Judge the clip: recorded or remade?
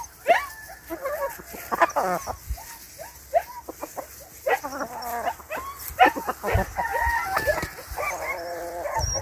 recorded